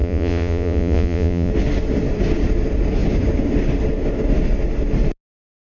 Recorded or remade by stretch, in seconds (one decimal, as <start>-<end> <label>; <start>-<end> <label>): 0.0-1.5 remade; 1.5-5.6 recorded